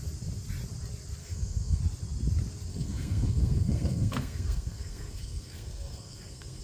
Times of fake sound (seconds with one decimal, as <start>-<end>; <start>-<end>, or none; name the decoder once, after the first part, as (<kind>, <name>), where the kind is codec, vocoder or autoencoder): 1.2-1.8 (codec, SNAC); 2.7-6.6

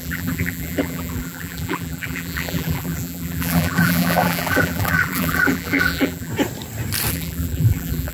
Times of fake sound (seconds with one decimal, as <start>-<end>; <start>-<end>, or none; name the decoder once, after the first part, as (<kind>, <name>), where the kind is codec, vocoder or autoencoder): 0.0-6.3 (vocoder, BigVGAN v2); 7.1-8.1

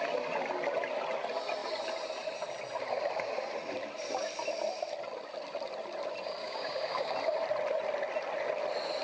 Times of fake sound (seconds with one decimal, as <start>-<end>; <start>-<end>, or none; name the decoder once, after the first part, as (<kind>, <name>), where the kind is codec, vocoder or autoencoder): 6.4-7.1 (codec, DAC)

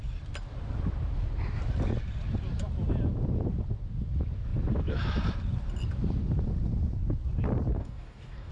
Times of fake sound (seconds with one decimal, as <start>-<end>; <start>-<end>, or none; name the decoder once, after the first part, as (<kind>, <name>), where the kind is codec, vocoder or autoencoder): 7.7-8.5 (codec, DAC)

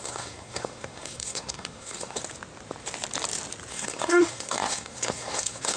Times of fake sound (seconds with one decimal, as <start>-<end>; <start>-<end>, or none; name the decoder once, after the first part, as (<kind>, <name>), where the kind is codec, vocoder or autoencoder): 0.0-2.2 (codec, SNAC); 3.7-5.8

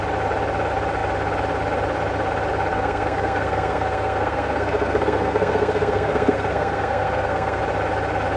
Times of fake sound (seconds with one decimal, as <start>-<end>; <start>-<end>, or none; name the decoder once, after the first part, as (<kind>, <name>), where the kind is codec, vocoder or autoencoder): 2.7-7.6 (codec, SNAC)

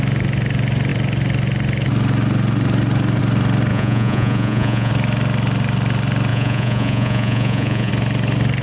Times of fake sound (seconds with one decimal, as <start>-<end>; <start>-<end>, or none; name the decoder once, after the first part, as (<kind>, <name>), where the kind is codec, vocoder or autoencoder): 3.7-4.9 (vocoder, Vocos); 6.3-7.9